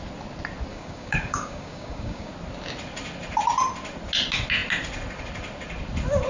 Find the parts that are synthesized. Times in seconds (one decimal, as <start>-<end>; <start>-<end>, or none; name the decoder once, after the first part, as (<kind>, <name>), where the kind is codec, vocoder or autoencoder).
0.7-2.3 (codec, DAC)